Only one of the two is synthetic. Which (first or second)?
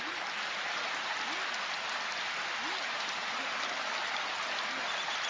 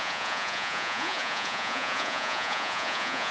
second